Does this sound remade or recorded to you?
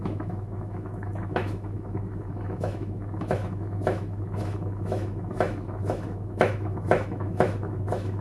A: remade